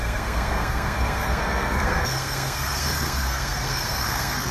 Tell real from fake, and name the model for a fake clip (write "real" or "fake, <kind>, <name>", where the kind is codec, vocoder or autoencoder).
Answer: fake, codec, SNAC